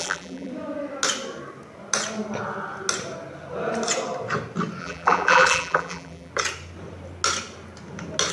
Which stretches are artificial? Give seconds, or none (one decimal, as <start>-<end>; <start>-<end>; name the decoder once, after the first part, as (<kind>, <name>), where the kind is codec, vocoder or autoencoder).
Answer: 0.0-0.5 (vocoder, BigVGAN v2); 4.8-6.3